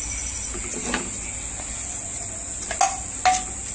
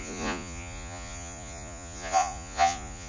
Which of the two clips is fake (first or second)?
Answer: second